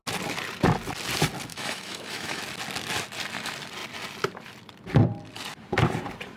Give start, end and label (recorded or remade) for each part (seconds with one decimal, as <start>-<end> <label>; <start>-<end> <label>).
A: 0.0-1.5 recorded; 1.5-2.4 remade; 2.4-6.4 recorded